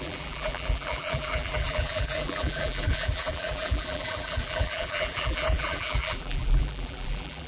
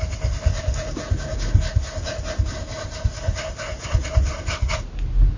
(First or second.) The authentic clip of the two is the second